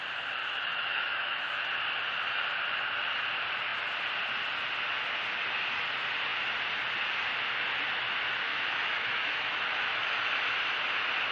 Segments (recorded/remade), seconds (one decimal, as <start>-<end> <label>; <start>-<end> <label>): 0.0-0.4 recorded; 0.4-1.7 remade; 1.7-8.5 recorded; 8.5-10.2 remade; 10.2-11.3 recorded